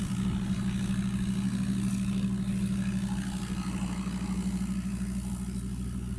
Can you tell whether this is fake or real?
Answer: real